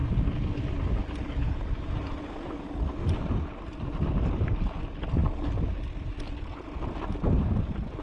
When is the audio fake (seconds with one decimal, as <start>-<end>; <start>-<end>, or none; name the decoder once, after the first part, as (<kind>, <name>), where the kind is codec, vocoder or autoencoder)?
none